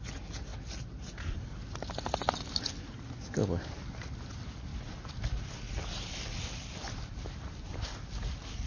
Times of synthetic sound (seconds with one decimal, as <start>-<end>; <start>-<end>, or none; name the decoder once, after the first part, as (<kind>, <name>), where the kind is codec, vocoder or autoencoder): none